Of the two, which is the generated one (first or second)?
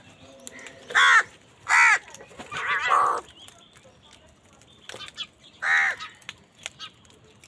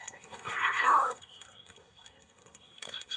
second